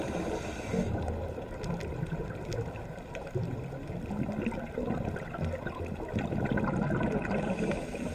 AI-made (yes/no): no